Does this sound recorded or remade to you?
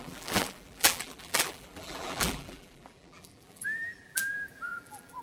remade